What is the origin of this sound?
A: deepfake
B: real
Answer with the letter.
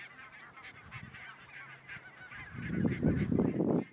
B